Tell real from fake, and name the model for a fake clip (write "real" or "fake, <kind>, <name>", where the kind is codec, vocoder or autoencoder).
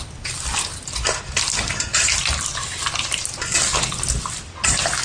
real